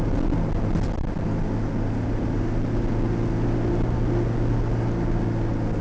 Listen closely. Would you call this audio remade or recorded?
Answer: recorded